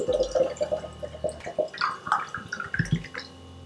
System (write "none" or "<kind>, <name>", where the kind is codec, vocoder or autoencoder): none